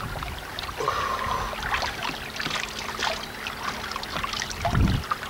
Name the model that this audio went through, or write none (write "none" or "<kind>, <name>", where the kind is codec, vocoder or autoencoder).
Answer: none